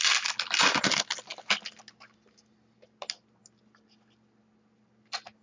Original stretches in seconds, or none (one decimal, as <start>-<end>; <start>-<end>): 0.0-5.4